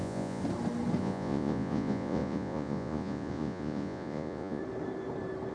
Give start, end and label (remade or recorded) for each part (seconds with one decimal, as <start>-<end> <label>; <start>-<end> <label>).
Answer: 0.0-0.4 remade; 0.4-1.0 recorded; 1.0-4.6 remade; 4.6-5.5 recorded